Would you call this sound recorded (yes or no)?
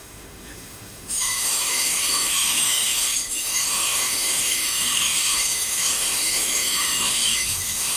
no